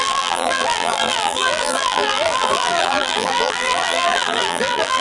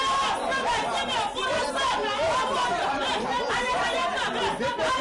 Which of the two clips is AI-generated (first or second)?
first